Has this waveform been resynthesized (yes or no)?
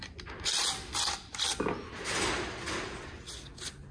no